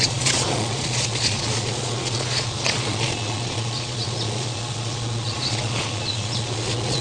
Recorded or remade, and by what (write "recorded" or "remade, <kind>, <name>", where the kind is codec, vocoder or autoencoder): remade, vocoder, Vocos